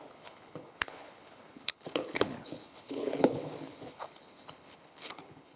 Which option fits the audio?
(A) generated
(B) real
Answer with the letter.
A